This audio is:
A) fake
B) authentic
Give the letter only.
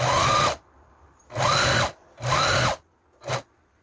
B